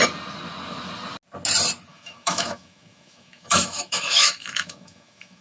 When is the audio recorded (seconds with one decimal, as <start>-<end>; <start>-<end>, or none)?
0.0-1.9